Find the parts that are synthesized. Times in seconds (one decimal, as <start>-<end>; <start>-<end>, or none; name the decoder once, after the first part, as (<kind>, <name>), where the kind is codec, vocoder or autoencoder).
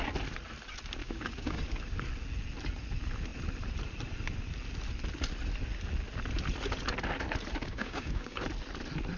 1.0-1.6 (codec, DAC); 7.6-8.4